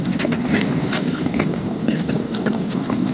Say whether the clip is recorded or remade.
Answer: remade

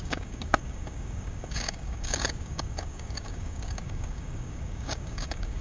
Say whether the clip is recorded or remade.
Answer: remade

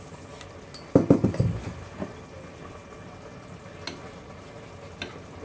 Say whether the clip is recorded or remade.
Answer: recorded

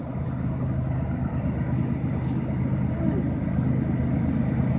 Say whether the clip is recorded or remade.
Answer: recorded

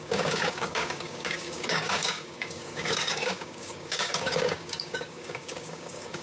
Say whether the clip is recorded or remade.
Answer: remade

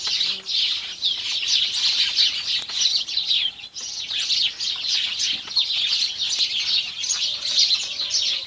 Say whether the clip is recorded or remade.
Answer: recorded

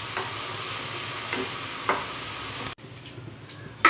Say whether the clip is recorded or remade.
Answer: recorded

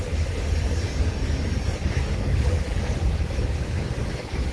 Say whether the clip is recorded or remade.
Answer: remade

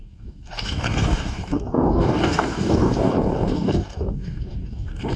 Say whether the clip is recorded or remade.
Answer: remade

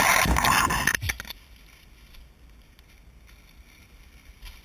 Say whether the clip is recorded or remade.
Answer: recorded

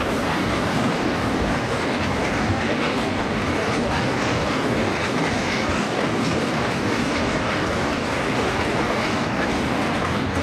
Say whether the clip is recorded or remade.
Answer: remade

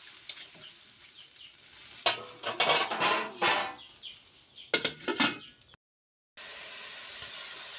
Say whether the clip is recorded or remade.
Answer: recorded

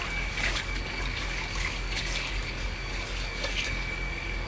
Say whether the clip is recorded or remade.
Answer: remade